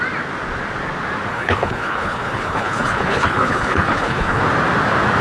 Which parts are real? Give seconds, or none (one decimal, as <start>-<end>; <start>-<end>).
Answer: 0.0-1.3; 4.4-5.2